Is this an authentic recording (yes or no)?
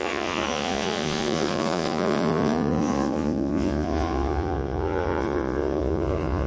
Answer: no